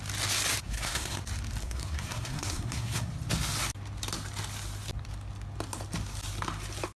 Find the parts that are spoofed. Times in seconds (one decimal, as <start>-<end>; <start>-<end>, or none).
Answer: 0.6-1.2; 1.6-3.1